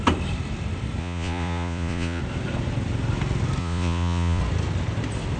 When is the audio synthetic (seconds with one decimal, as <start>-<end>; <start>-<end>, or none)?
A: 1.0-2.2; 3.6-4.4